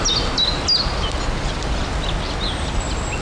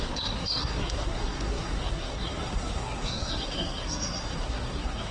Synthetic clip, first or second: second